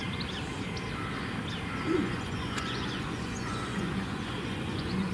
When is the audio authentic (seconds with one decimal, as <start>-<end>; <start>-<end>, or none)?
0.0-1.9